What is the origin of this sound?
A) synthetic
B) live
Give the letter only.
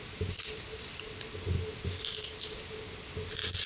B